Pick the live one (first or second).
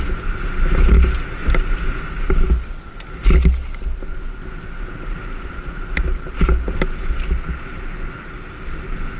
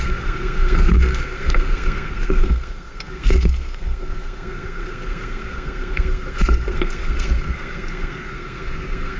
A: first